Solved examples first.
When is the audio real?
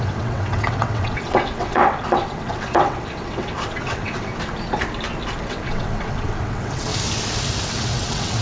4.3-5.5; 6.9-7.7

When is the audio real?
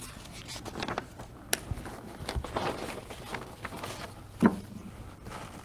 0.0-5.6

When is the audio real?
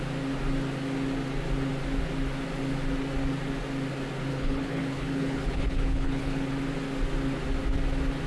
0.0-4.3; 6.5-8.3